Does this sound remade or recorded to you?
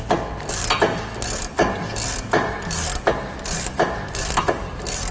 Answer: recorded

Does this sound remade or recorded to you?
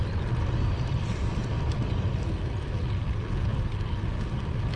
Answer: recorded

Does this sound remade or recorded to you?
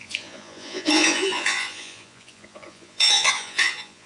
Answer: remade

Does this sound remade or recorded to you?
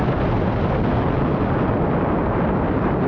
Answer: recorded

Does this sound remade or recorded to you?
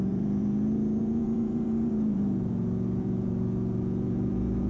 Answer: remade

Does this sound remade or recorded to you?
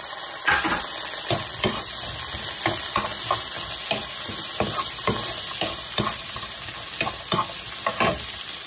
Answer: recorded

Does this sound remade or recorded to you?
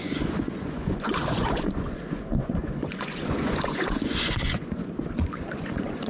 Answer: remade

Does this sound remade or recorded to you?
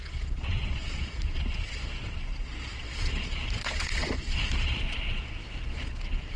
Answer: remade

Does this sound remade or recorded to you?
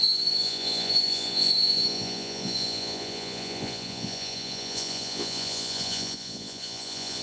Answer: remade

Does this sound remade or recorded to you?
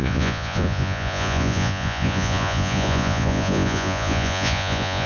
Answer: remade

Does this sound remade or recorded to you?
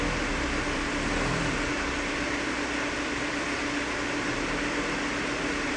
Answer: recorded